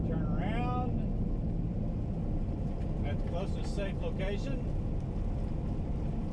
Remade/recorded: recorded